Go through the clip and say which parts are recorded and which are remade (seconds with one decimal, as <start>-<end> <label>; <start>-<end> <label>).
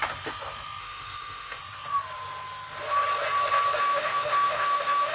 0.0-0.8 recorded; 0.8-1.6 remade; 1.6-3.8 recorded; 3.8-5.1 remade